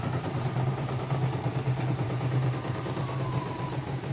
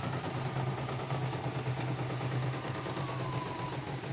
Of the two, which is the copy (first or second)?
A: first